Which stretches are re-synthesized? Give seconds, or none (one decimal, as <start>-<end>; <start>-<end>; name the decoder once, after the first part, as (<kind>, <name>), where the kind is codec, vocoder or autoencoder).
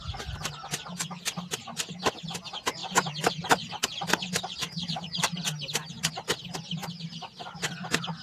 2.8-6.1 (vocoder, BigVGAN v2)